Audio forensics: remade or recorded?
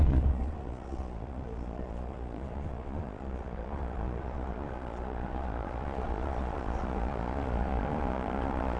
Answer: remade